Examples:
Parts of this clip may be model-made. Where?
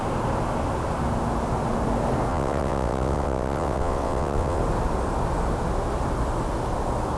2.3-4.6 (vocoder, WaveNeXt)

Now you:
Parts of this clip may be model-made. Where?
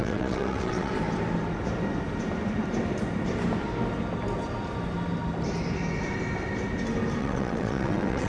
0.0-0.9 (vocoder, WaveNeXt); 7.2-8.3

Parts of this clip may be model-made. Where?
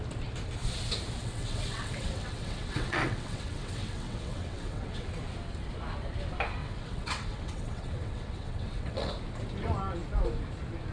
1.2-5.1 (vocoder, WaveNeXt); 6.6-9.1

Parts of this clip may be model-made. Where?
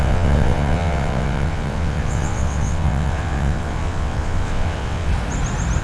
0.0-5.1 (vocoder, WaveNeXt)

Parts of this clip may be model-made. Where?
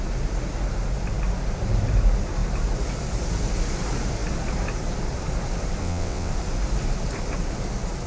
5.8-6.3 (vocoder, WaveNeXt)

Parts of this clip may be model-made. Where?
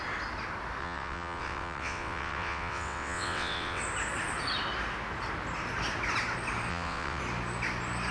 0.8-3.8 (vocoder, WaveNeXt); 6.7-7.2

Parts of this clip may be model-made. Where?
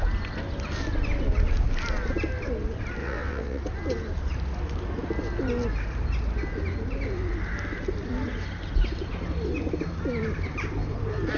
3.0-3.6 (vocoder, WaveNeXt)